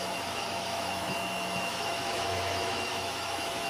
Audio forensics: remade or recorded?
remade